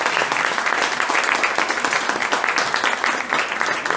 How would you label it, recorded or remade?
recorded